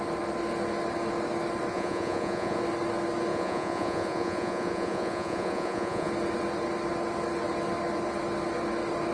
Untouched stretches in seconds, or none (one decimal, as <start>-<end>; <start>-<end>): 0.0-1.7; 2.6-3.3; 6.1-9.1